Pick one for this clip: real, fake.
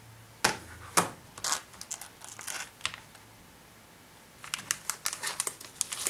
real